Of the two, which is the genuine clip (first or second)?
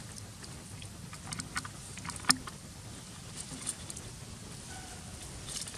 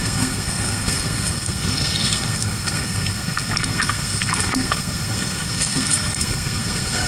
first